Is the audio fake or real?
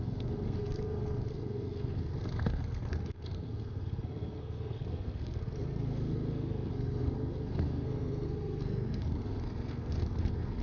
fake